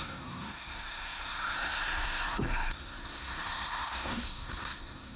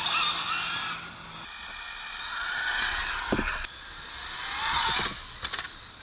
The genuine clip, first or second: second